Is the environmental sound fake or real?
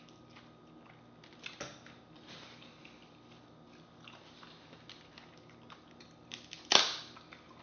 real